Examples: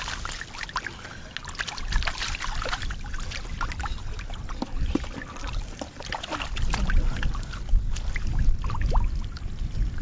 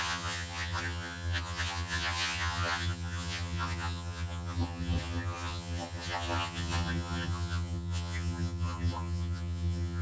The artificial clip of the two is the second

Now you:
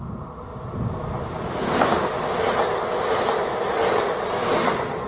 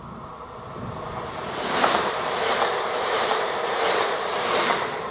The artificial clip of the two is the second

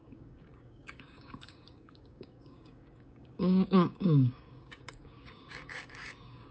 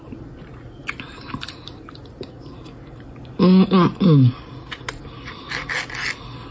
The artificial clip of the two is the first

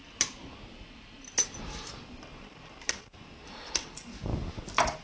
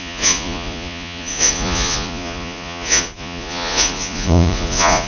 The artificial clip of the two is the second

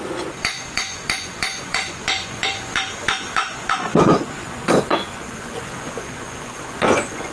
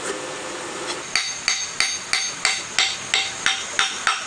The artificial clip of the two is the first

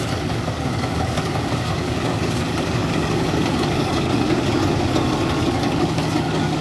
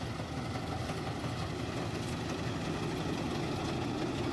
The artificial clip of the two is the first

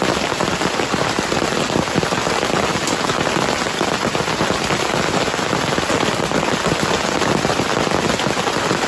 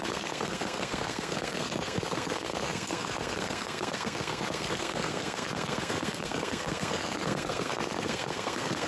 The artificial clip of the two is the second